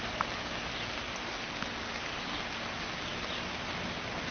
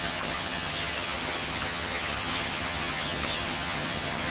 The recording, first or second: first